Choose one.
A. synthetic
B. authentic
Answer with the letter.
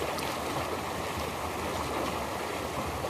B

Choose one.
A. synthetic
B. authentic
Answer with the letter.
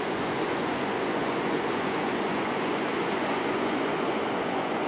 A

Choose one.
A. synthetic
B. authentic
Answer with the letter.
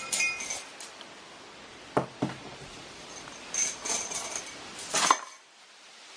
B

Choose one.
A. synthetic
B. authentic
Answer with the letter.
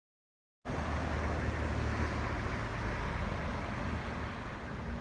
B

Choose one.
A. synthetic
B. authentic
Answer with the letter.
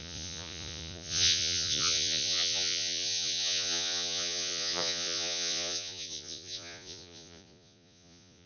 A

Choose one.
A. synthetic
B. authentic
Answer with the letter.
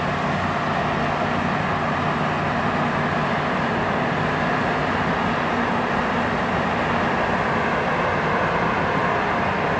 B